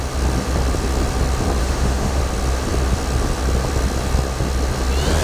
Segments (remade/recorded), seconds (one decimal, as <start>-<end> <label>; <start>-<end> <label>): 0.0-1.6 recorded; 1.6-2.2 remade; 2.2-5.2 recorded